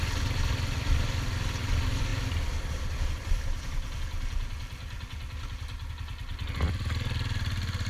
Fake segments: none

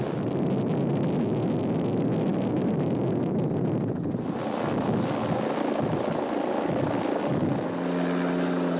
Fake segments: none